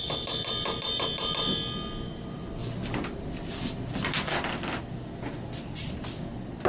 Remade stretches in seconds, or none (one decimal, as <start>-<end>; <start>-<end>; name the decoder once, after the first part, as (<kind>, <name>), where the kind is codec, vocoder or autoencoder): none